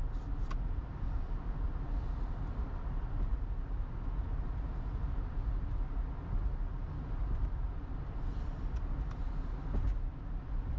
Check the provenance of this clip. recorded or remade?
recorded